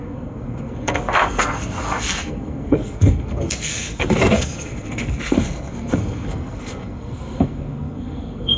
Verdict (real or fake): fake